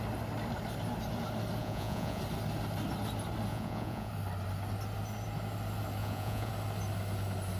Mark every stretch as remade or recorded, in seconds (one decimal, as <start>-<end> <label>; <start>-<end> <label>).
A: 0.0-1.6 recorded; 1.6-2.2 remade; 2.2-3.5 recorded; 3.5-4.1 remade; 4.1-6.0 recorded; 6.0-6.5 remade; 6.5-7.6 recorded